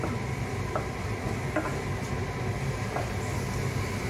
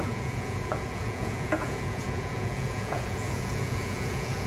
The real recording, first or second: first